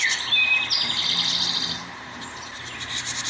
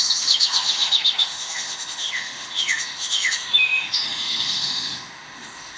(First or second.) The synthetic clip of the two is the second